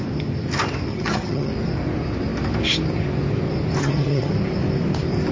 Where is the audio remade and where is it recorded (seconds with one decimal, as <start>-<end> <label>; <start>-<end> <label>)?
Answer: 0.0-0.9 recorded; 0.9-1.5 remade; 1.5-3.8 recorded; 3.8-4.3 remade; 4.3-5.3 recorded